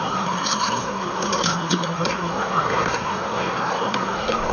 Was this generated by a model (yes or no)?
yes